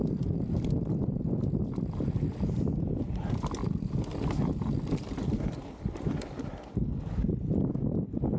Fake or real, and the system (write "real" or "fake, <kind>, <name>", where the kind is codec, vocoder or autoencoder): real